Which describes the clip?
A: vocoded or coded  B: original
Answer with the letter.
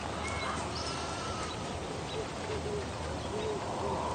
A